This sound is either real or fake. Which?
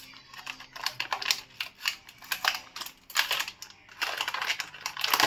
real